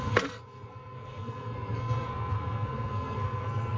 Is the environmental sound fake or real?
fake